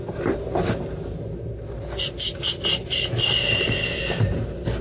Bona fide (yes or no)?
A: yes